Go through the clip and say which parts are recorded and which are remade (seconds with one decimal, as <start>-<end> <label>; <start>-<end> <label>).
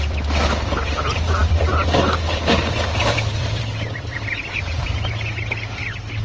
0.0-6.2 remade